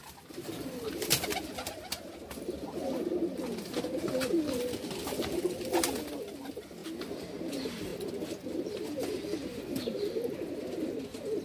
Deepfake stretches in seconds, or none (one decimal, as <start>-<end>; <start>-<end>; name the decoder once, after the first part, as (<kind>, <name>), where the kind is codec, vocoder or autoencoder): 0.0-6.8 (vocoder, BigVGAN v2); 7.5-7.9; 8.6-9.4; 10.3-11.4